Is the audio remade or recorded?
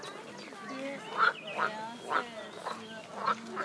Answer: recorded